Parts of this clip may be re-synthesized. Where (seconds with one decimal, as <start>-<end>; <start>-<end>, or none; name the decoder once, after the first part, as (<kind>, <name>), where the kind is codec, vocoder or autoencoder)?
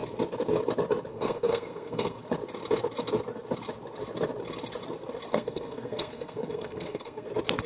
1.1-2.2 (codec, SNAC); 5.3-7.3